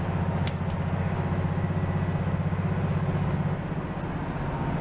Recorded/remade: recorded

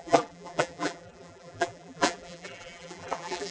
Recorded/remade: remade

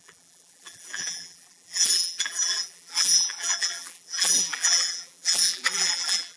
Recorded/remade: remade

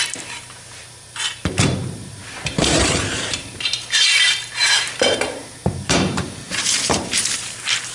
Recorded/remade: remade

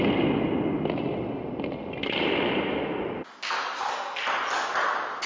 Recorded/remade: recorded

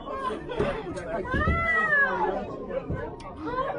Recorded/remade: remade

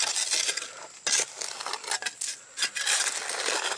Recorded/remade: recorded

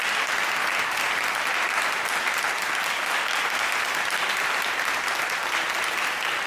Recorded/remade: recorded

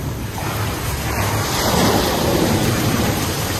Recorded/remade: remade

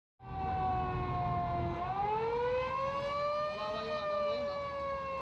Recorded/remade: recorded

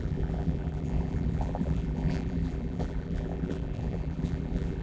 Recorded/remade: remade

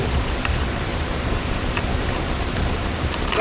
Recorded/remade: remade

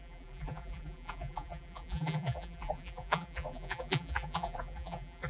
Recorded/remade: remade